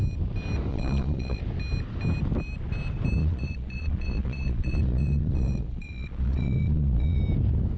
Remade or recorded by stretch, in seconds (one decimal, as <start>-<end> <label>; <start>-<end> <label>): 0.0-0.7 recorded; 0.7-1.4 remade; 1.4-3.2 recorded; 3.2-7.2 remade; 7.2-7.8 recorded